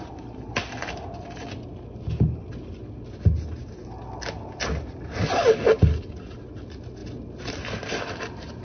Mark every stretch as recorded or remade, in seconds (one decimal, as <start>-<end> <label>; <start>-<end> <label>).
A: 0.0-8.6 recorded